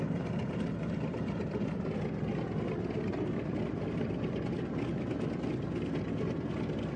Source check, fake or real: real